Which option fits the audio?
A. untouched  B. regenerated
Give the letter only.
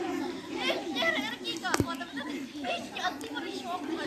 B